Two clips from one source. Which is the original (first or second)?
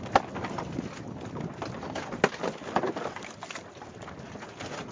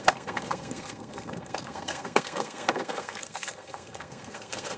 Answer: first